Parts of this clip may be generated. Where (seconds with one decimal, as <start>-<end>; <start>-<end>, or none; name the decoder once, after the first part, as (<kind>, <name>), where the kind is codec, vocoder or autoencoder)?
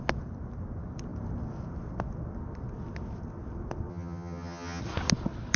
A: 3.9-4.8 (vocoder, HiFi-GAN)